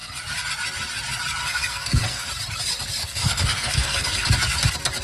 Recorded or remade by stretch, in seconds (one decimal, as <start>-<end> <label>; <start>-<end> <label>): 0.0-1.4 recorded; 1.4-2.3 remade; 2.3-3.0 recorded; 3.0-4.3 remade; 4.3-5.0 recorded

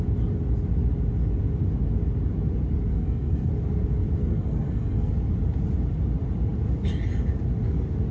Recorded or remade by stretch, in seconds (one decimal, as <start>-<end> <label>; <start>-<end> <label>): 0.0-2.9 recorded; 2.9-3.5 remade; 3.5-4.2 recorded; 4.2-5.1 remade; 5.1-8.1 recorded